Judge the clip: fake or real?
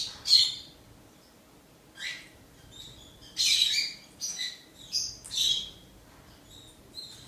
real